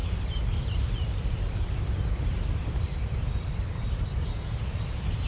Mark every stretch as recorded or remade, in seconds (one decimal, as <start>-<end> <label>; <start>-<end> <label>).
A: 0.0-1.8 remade; 1.8-5.3 recorded